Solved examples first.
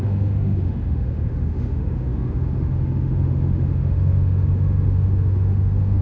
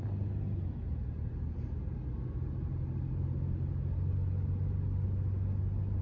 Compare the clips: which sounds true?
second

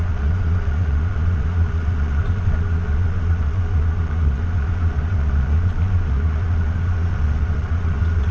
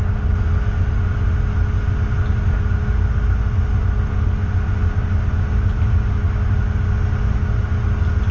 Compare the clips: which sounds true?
second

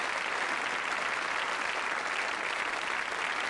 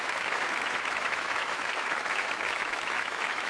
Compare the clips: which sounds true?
first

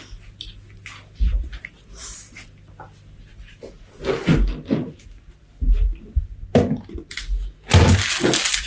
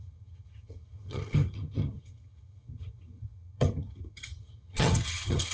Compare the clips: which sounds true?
first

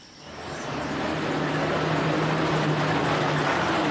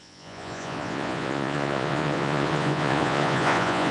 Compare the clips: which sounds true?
first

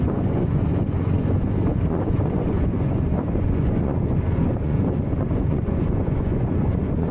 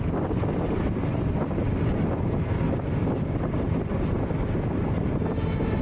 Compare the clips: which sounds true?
second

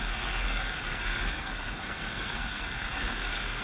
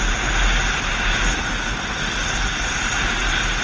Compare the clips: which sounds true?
second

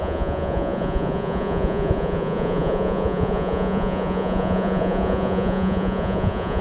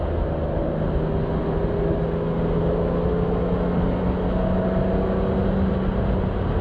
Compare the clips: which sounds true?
second